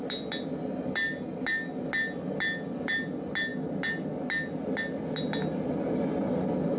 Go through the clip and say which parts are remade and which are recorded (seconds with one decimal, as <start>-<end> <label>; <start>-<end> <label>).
0.0-6.8 recorded